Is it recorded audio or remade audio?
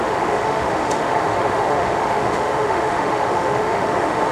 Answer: remade